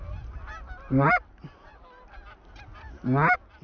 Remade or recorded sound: recorded